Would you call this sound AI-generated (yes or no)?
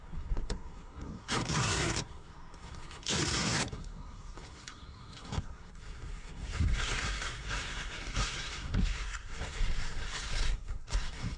yes